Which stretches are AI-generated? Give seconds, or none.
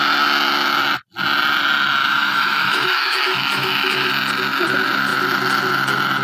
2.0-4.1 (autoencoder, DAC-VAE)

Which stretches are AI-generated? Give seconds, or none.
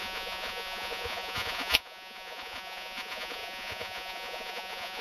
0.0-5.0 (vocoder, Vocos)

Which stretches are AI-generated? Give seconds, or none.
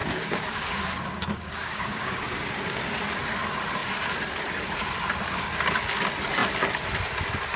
0.0-2.8 (codec, DAC)